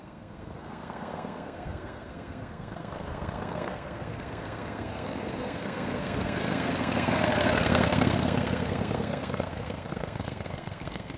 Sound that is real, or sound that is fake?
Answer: fake